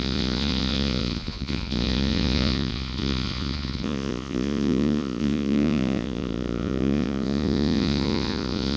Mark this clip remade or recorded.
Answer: remade